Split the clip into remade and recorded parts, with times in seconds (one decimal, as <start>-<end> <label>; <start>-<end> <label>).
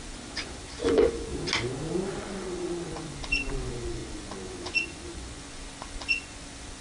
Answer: 0.0-1.3 remade; 1.3-2.2 recorded; 2.2-6.8 remade